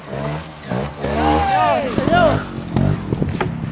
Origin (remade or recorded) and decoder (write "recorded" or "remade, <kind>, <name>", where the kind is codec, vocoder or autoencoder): recorded